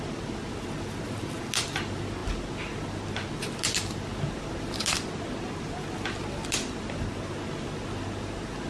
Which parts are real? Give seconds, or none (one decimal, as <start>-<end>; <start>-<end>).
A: 0.0-8.7